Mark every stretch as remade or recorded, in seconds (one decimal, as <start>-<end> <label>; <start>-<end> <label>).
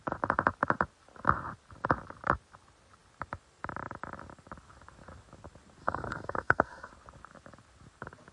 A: 0.0-5.8 recorded; 5.8-6.9 remade; 6.9-8.3 recorded